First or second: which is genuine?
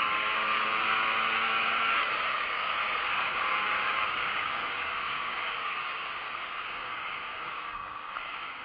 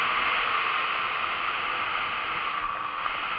second